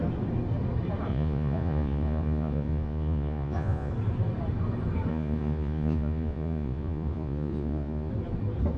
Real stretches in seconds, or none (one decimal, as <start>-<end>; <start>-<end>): 0.0-1.1; 3.9-5.1; 8.1-8.8